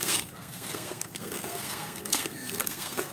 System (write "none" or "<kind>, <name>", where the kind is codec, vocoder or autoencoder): codec, SNAC